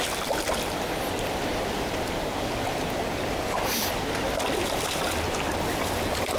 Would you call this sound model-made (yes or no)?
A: no